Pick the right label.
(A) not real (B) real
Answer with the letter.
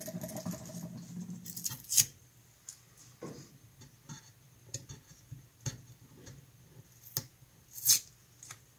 B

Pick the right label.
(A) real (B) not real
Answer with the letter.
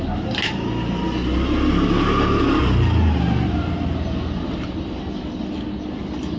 A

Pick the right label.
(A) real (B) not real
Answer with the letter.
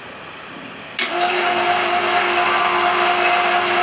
A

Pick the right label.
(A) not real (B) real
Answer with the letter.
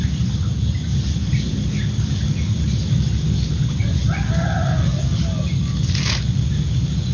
B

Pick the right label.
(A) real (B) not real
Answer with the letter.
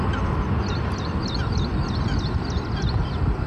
A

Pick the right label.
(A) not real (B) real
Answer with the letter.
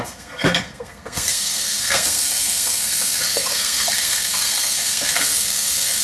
A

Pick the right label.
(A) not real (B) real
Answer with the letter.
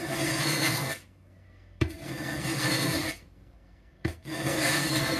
A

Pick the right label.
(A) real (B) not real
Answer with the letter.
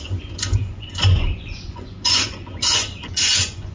B